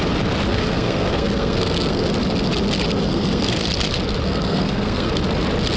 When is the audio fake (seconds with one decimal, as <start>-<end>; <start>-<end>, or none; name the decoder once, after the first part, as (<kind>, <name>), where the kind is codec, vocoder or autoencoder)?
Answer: 0.5-2.1 (codec, SNAC); 3.0-3.6; 4.2-5.1